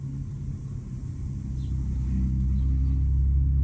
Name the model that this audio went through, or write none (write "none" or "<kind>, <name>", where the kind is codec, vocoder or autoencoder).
none